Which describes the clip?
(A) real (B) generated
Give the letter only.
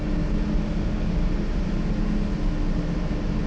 A